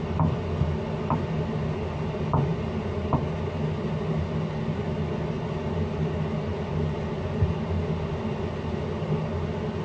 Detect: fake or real real